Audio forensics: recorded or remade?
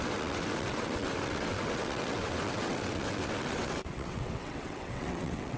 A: remade